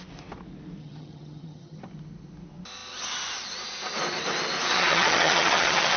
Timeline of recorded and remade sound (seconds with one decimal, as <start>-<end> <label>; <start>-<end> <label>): 0.0-0.8 recorded; 0.8-1.8 remade; 1.8-4.7 recorded; 4.7-6.0 remade